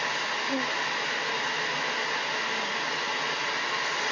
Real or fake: real